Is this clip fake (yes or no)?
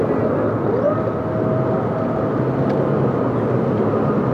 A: no